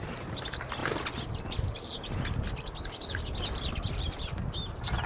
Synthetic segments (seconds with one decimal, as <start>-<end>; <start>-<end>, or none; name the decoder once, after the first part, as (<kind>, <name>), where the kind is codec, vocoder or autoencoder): 0.0-0.8 (vocoder, BigVGAN v2); 3.9-5.1